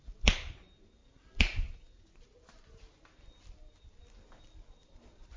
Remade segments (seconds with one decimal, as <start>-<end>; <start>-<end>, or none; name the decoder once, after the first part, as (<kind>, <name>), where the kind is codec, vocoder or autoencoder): none